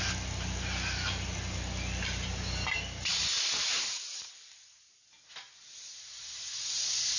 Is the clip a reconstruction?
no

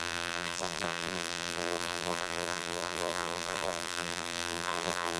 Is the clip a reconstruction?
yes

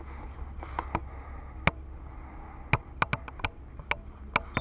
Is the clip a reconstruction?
no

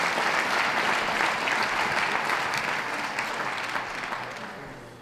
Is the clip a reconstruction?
no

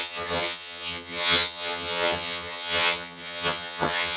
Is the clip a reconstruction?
yes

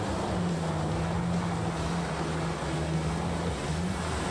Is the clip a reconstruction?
no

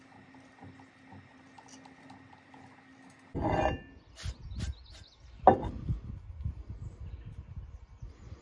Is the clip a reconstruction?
no